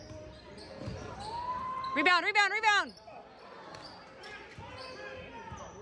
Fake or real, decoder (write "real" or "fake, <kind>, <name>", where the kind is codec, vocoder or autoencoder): real